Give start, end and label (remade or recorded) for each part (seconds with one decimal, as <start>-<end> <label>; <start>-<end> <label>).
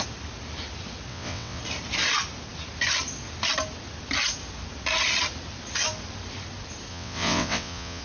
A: 0.0-1.1 recorded; 1.1-1.6 remade; 1.6-6.9 recorded; 6.9-8.0 remade